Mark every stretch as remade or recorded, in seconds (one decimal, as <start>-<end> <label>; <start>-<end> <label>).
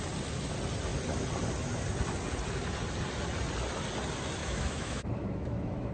0.0-4.4 recorded; 4.4-5.9 remade